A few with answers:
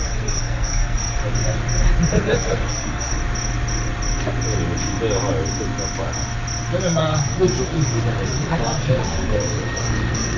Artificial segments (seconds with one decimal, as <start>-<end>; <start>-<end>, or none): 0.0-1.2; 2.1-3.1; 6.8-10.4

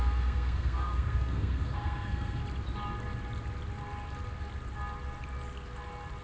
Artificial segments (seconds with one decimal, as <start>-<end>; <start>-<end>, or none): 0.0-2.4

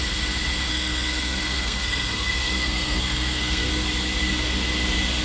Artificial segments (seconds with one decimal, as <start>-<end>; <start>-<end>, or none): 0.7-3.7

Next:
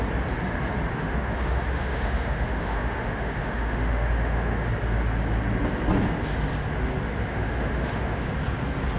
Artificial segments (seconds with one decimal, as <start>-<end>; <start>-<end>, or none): 0.9-4.7; 7.3-8.3

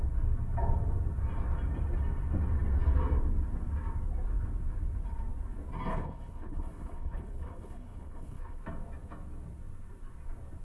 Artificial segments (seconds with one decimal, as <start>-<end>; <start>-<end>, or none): 5.9-8.6